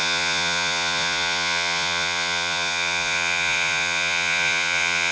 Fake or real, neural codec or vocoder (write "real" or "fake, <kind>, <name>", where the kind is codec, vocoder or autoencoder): fake, vocoder, Vocos